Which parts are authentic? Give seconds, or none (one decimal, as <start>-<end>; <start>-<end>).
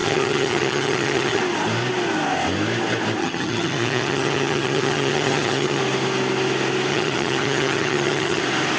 1.4-3.2; 5.8-6.9; 8.4-8.8